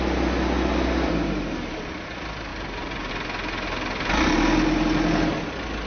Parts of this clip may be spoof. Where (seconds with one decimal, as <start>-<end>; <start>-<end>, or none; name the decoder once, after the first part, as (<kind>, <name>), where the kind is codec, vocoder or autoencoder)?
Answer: 2.5-3.1 (vocoder, BigVGAN v2)